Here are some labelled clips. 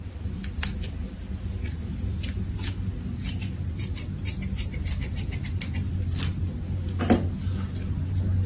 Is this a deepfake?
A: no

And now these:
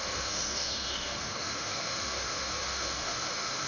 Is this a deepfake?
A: yes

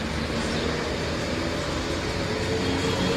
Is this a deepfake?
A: no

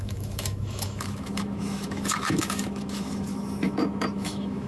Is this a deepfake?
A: yes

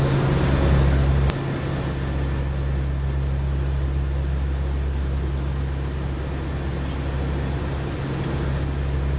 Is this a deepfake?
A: no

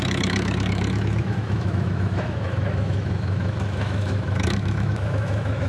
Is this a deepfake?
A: yes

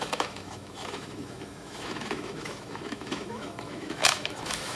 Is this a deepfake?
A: yes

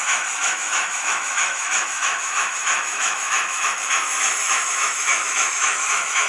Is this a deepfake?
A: yes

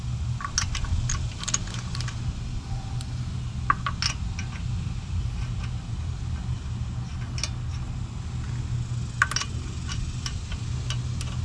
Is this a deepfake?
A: no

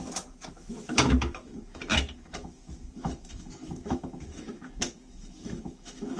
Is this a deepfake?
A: yes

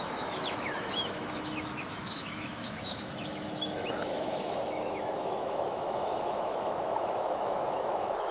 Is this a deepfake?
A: yes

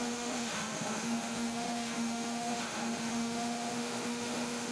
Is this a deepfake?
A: yes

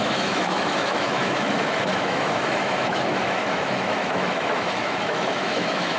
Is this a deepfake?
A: yes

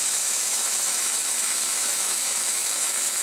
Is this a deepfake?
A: yes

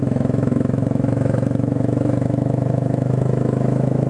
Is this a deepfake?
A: yes